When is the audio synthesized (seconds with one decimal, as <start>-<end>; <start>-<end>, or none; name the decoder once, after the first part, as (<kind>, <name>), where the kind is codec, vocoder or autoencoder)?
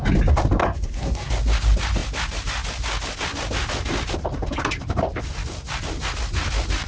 0.6-1.3 (codec, SNAC)